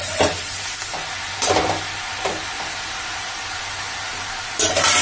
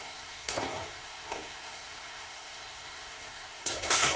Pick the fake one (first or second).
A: second